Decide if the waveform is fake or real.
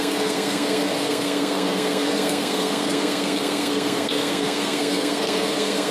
fake